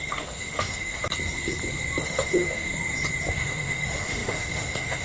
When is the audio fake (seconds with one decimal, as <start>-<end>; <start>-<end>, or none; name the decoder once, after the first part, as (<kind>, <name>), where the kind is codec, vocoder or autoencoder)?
0.0-1.0 (autoencoder, DAC-VAE); 2.0-2.7; 3.3-5.0